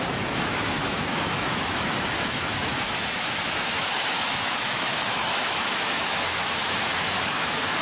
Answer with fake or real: fake